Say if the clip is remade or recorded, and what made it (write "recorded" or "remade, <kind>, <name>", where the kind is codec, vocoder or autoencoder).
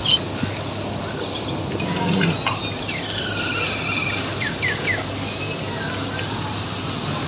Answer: recorded